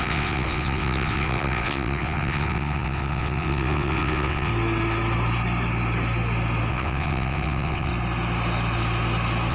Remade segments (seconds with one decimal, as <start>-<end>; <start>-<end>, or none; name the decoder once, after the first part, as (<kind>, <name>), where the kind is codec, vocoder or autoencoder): 0.0-4.5 (vocoder, WaveNeXt); 6.7-7.9